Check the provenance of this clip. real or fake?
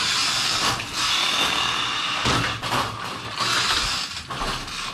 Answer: real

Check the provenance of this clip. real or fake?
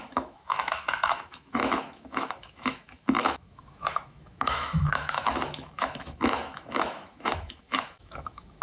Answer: fake